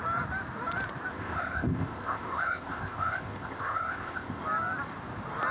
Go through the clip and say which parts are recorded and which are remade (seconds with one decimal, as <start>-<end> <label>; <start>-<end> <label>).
0.0-1.1 recorded; 1.1-4.4 remade; 4.4-5.5 recorded